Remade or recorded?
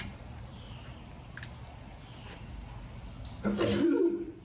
recorded